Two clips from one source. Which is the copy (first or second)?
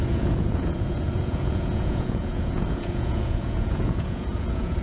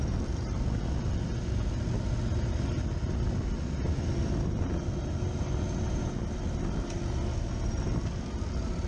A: first